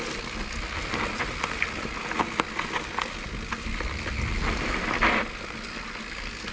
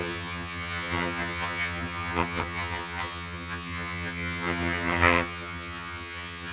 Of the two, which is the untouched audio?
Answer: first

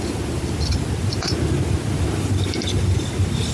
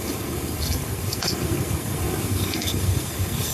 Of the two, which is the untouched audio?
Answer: first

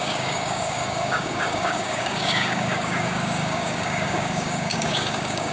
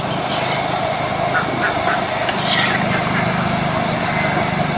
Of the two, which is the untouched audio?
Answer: second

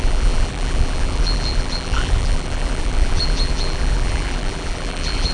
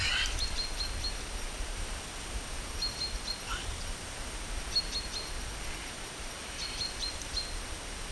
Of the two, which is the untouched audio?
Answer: second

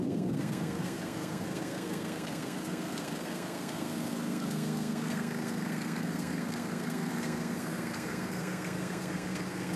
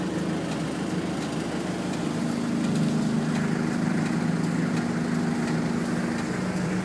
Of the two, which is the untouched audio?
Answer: second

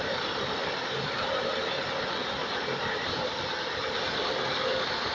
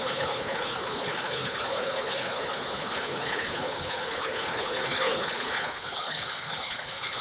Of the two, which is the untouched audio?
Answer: first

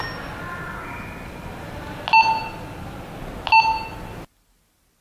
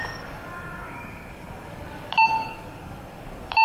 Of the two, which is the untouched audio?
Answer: first